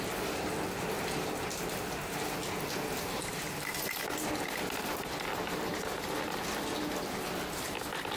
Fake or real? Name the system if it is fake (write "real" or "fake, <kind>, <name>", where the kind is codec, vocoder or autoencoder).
real